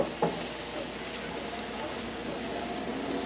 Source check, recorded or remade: recorded